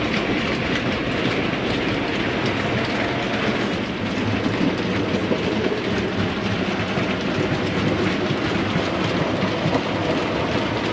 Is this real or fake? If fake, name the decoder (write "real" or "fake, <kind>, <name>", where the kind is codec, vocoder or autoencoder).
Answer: real